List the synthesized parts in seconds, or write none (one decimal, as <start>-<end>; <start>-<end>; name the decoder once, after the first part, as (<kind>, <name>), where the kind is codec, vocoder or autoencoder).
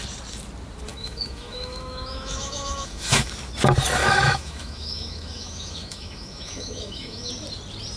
0.9-3.3 (autoencoder, DAC-VAE); 4.0-7.3